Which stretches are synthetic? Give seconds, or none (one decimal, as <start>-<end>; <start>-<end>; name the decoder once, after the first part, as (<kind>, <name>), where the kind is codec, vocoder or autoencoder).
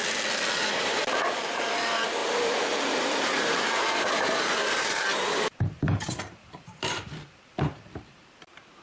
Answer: 0.6-8.8 (vocoder, BigVGAN v2)